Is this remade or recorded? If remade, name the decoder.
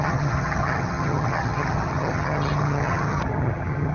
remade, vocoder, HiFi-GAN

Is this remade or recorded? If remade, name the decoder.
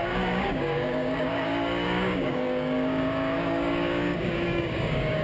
remade, codec, DAC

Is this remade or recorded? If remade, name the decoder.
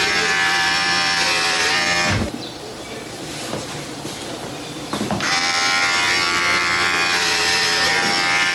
remade, vocoder, BigVGAN v2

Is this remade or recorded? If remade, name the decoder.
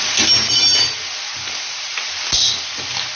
recorded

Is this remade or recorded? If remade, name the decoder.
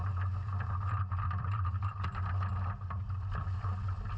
recorded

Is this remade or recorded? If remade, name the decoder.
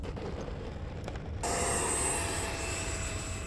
recorded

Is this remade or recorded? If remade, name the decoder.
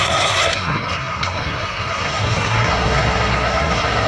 remade, codec, SNAC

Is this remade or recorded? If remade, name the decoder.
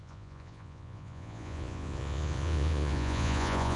remade, vocoder, Vocos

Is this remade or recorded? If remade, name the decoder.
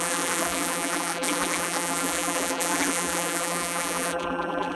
remade, vocoder, BigVGAN v2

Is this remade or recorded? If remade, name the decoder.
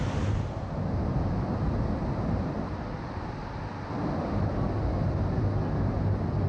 recorded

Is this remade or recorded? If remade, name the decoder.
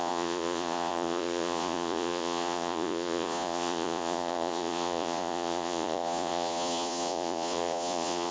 remade, vocoder, Vocos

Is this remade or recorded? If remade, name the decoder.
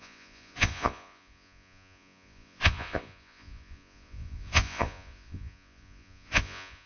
remade, vocoder, Vocos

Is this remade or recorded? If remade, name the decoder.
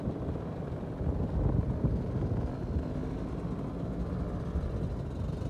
recorded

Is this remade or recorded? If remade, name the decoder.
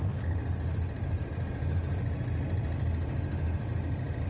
recorded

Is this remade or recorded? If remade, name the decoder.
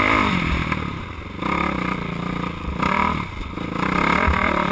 recorded